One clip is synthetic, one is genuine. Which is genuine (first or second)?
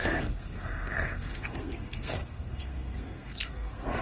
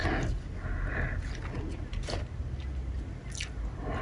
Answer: second